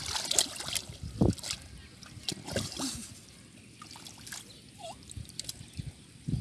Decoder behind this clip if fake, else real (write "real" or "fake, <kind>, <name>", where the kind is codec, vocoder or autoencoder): real